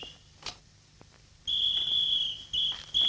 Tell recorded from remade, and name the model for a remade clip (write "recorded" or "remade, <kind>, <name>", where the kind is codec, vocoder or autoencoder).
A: recorded